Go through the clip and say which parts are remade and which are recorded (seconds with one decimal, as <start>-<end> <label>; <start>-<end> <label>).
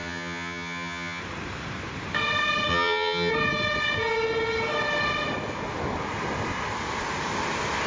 0.0-1.2 remade; 1.2-2.7 recorded; 2.7-3.3 remade; 3.3-7.9 recorded